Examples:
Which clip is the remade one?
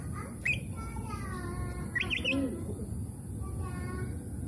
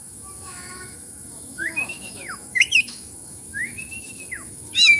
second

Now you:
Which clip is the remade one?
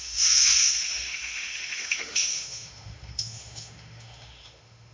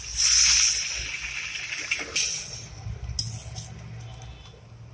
first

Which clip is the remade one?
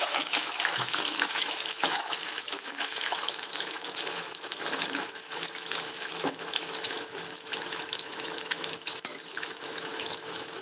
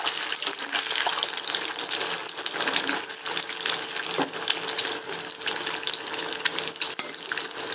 first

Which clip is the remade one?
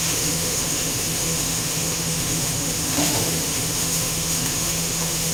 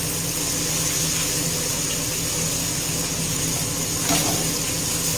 first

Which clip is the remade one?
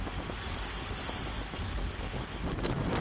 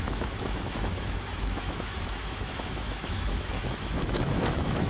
second